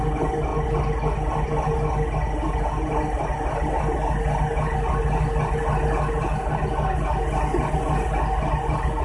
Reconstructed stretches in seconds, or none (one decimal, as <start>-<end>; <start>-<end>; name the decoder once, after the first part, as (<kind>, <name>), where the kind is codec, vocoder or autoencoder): none